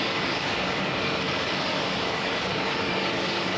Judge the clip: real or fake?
fake